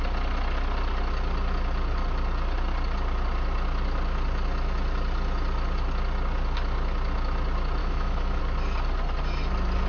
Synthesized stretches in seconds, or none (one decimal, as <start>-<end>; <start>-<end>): 7.8-8.4